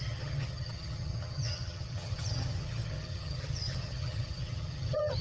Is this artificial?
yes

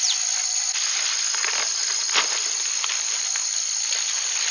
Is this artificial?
no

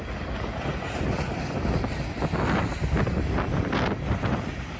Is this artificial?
no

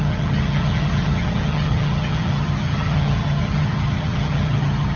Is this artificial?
yes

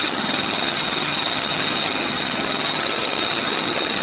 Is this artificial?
yes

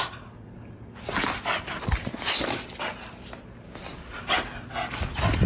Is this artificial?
no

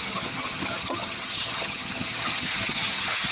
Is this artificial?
yes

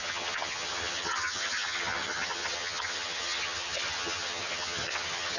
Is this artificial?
yes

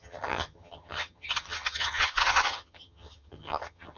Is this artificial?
yes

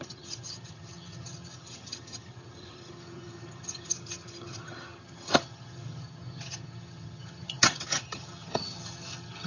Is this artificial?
yes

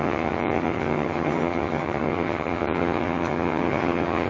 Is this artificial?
yes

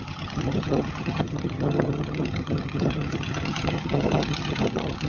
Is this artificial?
yes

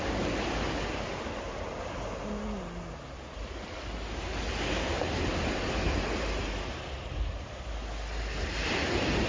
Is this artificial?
no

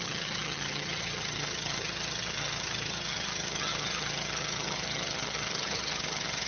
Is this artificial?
yes